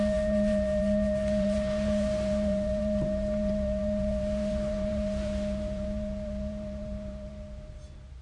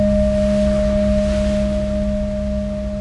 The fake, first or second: first